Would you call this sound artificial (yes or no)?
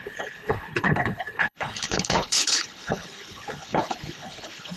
yes